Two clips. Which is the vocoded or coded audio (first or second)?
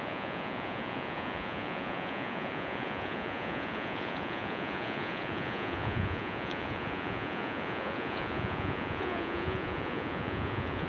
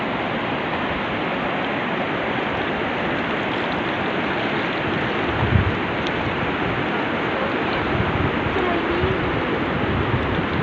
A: first